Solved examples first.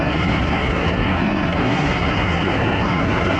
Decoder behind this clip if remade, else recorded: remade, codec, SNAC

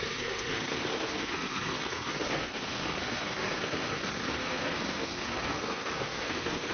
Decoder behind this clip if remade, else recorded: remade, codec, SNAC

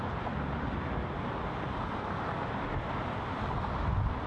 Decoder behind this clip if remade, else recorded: recorded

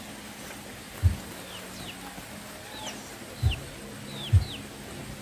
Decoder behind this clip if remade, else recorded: recorded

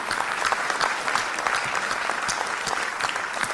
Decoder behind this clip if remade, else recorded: recorded